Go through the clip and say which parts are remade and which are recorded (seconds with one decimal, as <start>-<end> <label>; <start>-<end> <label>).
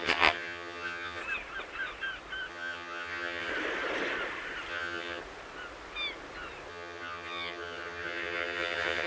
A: 0.0-1.2 remade; 1.2-2.5 recorded; 2.5-3.5 remade; 3.5-4.7 recorded; 4.7-5.2 remade; 5.2-6.7 recorded; 6.7-9.1 remade